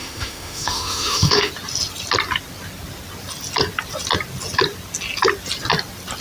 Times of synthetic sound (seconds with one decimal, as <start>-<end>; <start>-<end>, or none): 0.0-1.5